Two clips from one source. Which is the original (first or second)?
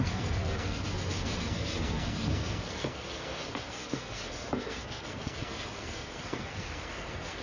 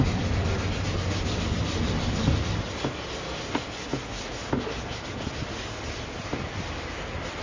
second